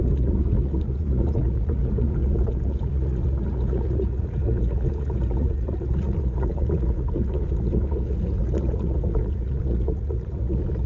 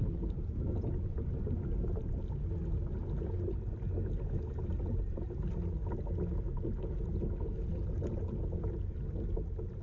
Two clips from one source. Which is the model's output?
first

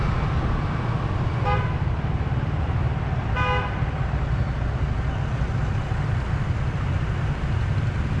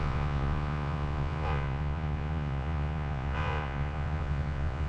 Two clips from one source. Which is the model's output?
second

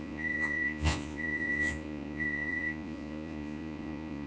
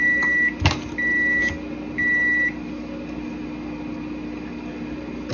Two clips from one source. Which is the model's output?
first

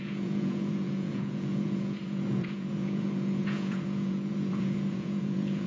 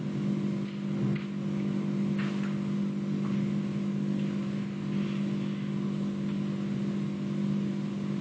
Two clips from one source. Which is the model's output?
first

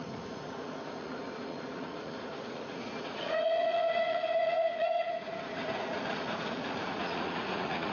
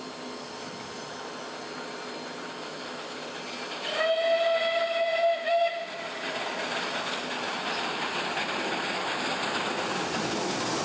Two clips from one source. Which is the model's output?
first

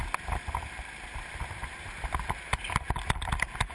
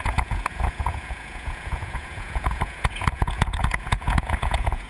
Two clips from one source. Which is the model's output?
second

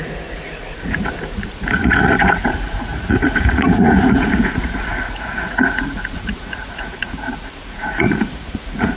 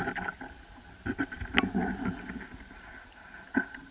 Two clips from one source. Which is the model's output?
first